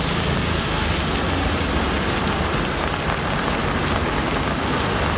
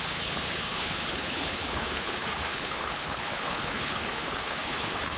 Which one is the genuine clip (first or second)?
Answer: first